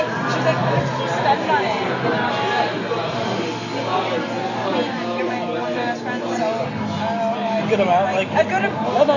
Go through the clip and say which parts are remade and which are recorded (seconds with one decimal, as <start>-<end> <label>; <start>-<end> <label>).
0.0-9.2 recorded